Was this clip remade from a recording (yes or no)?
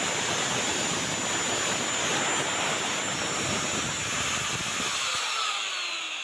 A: no